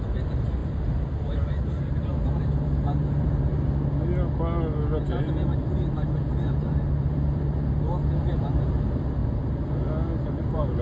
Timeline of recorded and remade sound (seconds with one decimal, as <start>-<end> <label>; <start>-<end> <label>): 0.0-3.5 remade; 3.5-5.1 recorded; 5.1-9.2 remade; 9.2-10.3 recorded; 10.3-10.8 remade